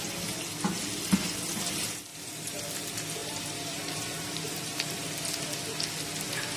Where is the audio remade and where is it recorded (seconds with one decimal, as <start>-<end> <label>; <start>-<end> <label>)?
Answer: 0.0-2.1 recorded; 2.1-2.6 remade; 2.6-3.2 recorded; 3.2-4.9 remade; 4.9-6.6 recorded

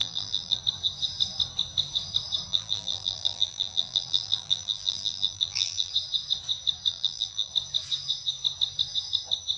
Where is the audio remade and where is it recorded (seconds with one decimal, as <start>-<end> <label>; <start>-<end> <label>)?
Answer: 0.0-0.6 remade; 0.6-2.5 recorded; 2.5-5.9 remade; 5.9-6.9 recorded; 6.9-7.5 remade; 7.5-9.6 recorded

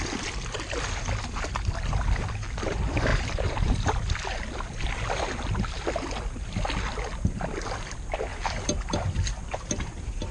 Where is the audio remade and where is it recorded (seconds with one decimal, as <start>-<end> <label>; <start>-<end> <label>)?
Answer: 0.0-3.1 recorded; 3.1-4.0 remade; 4.0-8.3 recorded; 8.3-9.0 remade; 9.0-10.3 recorded

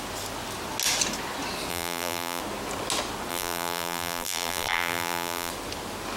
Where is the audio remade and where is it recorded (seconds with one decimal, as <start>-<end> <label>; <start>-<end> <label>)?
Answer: 0.0-1.7 recorded; 1.7-2.4 remade; 2.4-3.3 recorded; 3.3-5.5 remade; 5.5-6.2 recorded